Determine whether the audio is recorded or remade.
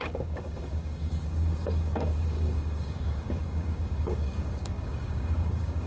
remade